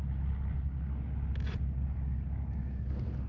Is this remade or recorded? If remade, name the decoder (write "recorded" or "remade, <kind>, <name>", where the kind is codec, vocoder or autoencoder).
recorded